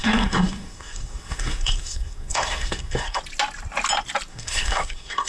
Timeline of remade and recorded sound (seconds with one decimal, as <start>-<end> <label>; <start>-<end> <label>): 0.0-3.2 remade; 3.2-4.3 recorded; 4.3-5.3 remade